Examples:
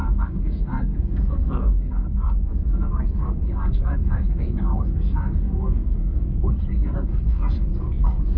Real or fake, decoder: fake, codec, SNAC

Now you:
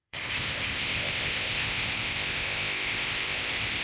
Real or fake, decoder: fake, codec, ZipCodec